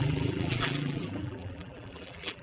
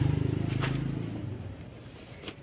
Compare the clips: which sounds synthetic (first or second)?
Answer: first